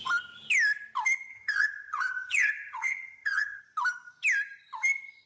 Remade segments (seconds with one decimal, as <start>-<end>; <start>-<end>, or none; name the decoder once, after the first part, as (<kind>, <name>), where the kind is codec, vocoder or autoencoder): 1.3-3.6 (vocoder, HiFi-GAN)